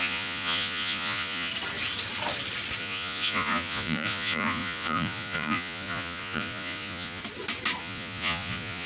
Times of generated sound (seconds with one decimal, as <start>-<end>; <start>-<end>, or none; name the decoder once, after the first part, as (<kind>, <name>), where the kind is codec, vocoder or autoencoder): 0.0-1.5 (vocoder, Vocos); 2.8-7.2; 7.8-8.9